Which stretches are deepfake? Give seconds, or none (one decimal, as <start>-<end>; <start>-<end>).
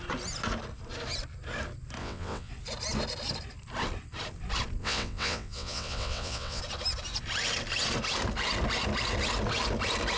2.0-2.5; 4.8-6.6